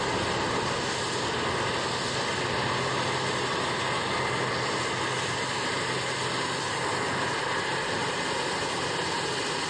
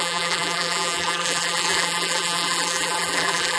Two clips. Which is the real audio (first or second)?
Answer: first